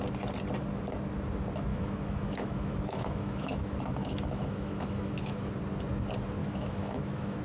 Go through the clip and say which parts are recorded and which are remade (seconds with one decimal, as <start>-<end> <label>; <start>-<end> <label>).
0.0-1.7 recorded; 1.7-5.5 remade; 5.5-6.4 recorded; 6.4-7.4 remade